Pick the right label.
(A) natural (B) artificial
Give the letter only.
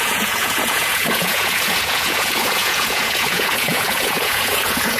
B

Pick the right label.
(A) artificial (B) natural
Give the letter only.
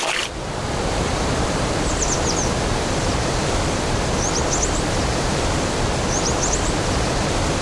B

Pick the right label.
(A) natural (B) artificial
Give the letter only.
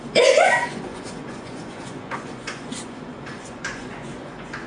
B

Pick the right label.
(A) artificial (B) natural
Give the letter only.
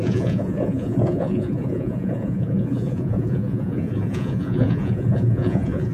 A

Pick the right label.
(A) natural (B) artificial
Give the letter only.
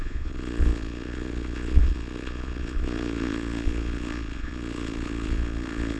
B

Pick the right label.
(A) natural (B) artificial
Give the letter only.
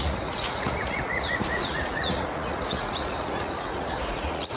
B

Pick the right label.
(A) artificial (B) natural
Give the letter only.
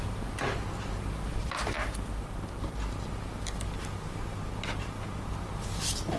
B